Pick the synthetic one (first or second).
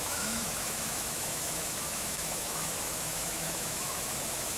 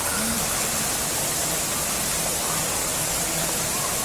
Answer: first